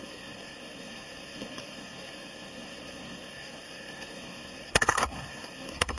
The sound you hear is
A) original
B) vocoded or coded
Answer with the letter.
B